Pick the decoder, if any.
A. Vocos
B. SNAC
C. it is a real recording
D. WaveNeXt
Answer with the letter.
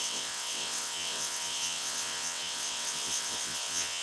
D